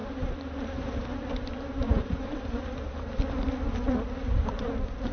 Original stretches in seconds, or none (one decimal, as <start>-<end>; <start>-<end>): 3.1-5.1